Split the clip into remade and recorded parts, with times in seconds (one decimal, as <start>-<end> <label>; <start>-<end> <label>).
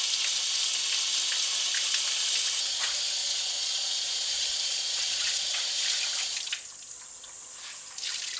0.0-3.2 recorded; 3.2-5.6 remade; 5.6-8.4 recorded